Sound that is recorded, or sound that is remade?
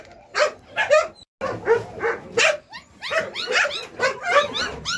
recorded